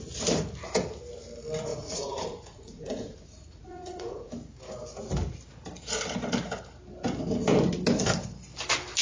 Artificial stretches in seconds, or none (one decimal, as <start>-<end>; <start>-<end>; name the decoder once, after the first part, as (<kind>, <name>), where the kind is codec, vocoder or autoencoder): 1.7-4.3 (vocoder, Vocos)